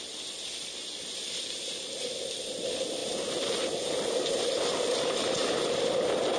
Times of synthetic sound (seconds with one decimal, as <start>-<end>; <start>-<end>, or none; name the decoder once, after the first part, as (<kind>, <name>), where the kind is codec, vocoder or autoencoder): none

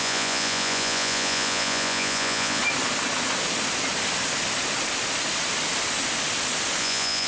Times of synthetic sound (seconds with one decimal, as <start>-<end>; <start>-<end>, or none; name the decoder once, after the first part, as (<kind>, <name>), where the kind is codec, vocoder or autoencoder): 0.0-2.6 (vocoder, Vocos); 6.8-7.3

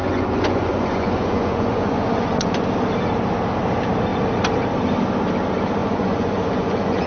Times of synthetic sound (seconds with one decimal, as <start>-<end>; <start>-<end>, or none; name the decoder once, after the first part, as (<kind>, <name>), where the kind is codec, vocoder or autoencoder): 0.0-2.6 (vocoder, Vocos); 5.8-7.1

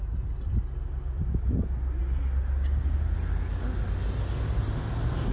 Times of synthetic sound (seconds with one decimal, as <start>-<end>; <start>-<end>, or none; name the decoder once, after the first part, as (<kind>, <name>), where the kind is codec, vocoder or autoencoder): none

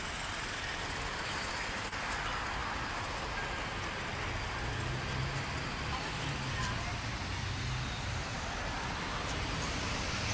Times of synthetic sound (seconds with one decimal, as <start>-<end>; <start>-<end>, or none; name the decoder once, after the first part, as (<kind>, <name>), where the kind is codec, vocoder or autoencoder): none

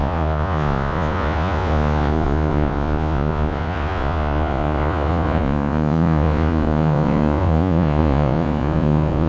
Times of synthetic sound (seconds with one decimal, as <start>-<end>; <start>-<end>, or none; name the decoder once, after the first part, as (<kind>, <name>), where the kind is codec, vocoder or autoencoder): 0.0-9.3 (vocoder, Vocos)

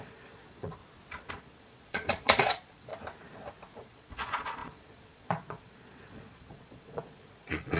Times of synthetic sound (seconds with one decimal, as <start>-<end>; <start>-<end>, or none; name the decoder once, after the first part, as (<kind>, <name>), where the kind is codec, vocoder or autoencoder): 0.0-0.8 (vocoder, Vocos); 1.3-2.9; 3.8-7.8